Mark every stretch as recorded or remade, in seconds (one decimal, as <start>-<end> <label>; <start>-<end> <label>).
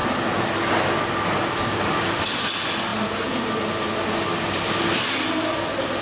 0.0-6.0 recorded